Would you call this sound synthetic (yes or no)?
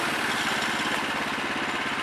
no